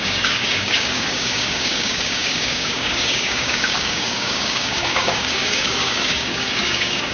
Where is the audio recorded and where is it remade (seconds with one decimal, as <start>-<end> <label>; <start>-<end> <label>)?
0.0-7.1 remade